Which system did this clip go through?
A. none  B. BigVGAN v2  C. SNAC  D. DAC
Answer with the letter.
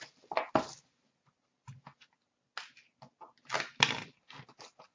A